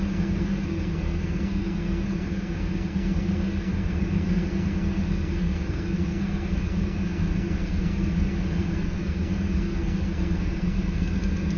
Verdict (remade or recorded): remade